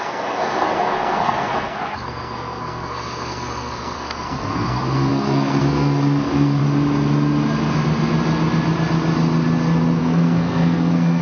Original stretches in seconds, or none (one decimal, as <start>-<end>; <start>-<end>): 6.6-10.0